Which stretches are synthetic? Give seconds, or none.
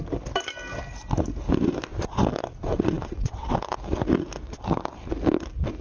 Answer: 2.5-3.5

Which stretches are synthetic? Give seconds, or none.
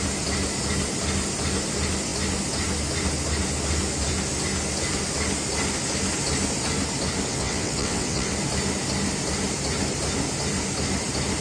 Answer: 7.3-8.3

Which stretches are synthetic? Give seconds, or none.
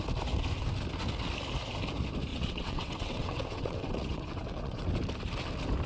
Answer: 2.3-4.9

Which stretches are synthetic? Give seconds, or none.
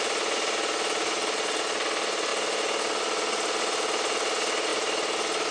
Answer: none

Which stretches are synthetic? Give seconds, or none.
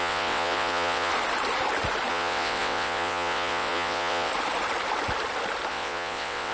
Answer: 0.0-1.1; 2.1-4.3; 5.7-6.5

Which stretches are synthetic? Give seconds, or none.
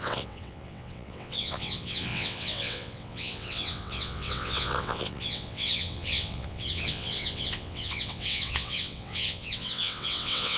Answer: 0.0-10.6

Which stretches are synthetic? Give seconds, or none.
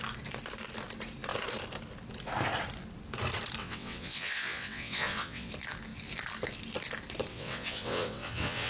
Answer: 3.6-5.5; 7.3-8.7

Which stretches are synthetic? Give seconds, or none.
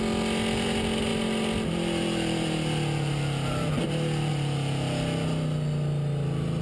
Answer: none